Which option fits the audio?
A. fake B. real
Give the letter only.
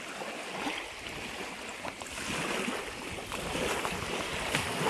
B